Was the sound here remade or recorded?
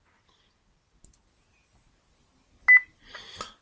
recorded